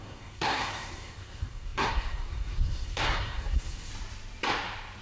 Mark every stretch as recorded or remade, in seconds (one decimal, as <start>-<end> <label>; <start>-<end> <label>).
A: 0.0-3.9 remade; 3.9-5.0 recorded